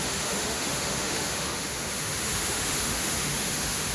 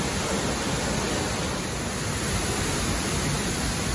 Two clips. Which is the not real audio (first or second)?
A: first